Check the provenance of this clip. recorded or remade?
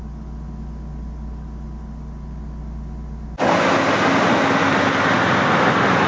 recorded